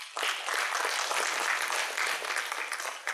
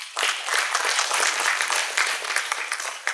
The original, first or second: first